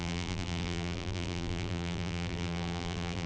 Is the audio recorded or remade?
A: remade